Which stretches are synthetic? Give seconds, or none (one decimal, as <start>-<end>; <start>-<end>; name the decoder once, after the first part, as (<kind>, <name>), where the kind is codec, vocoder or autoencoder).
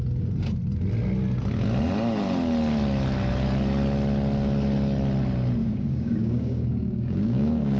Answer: 5.6-7.8 (codec, DAC)